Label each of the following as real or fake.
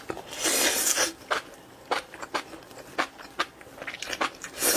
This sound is real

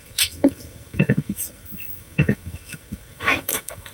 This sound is fake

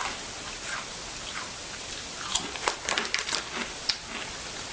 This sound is real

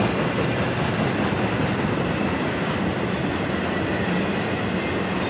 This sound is real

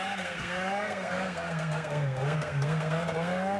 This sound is fake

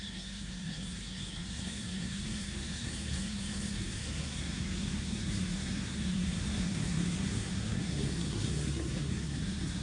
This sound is fake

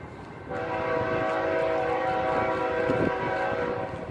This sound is real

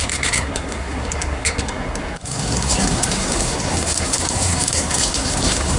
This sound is fake